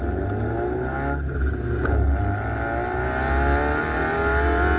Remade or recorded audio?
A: recorded